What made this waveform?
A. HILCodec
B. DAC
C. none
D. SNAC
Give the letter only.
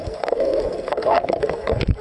D